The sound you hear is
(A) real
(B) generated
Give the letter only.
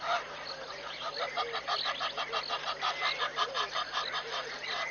A